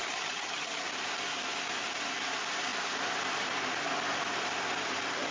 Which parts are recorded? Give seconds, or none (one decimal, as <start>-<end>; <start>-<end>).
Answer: 0.9-5.3